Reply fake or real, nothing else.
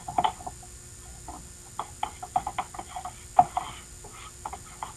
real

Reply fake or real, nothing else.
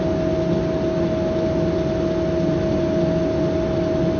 real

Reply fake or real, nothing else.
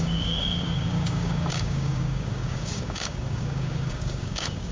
fake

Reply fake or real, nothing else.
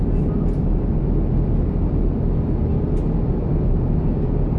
real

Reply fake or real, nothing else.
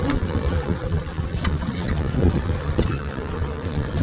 fake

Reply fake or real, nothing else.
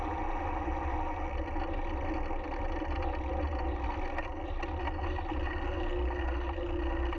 real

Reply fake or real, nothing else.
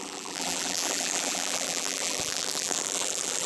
fake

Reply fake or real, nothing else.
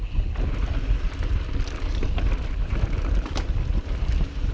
real